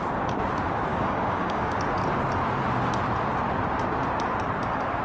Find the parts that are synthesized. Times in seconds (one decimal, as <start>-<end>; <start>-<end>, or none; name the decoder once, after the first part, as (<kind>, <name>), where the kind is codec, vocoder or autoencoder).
0.9-1.8 (codec, DAC)